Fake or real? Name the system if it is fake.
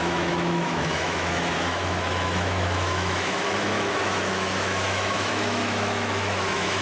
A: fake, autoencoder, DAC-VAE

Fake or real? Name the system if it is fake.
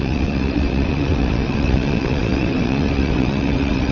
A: fake, vocoder, WaveNeXt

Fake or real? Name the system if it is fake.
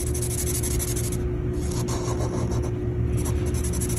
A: real